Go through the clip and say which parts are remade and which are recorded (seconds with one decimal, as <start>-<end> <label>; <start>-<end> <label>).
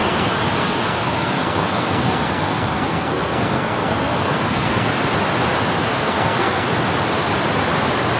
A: 0.0-4.9 remade; 4.9-5.9 recorded; 5.9-6.7 remade; 6.7-8.2 recorded